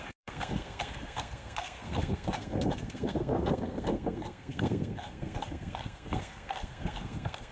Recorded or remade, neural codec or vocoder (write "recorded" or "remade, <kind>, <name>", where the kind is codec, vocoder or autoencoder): remade, codec, SNAC